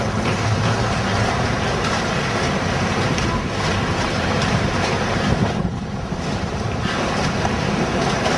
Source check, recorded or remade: remade